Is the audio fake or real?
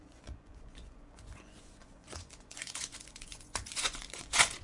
fake